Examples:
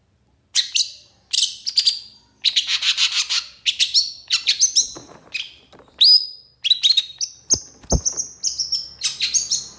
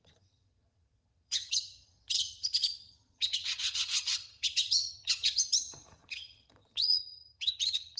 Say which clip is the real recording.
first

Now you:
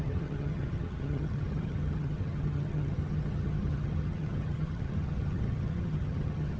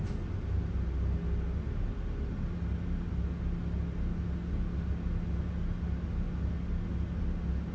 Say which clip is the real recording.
second